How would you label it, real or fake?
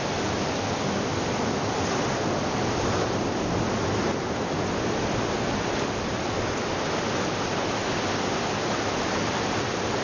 real